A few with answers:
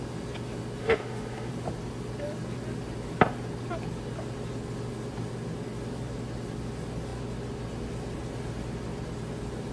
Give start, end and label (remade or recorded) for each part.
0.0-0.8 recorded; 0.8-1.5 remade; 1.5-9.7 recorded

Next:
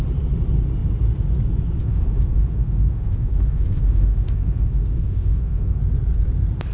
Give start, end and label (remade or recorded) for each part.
0.0-1.8 recorded; 1.8-5.8 remade; 5.8-6.7 recorded

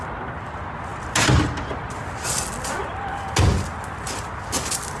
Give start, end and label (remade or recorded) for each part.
0.0-5.0 recorded

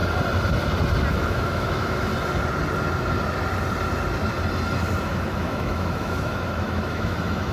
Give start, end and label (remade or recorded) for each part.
0.0-1.1 recorded; 1.1-2.1 remade; 2.1-5.0 recorded; 5.0-7.5 remade

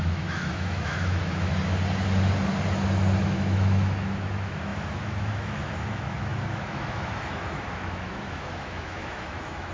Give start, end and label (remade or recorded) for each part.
0.0-1.5 remade; 1.5-3.2 recorded; 3.2-9.7 remade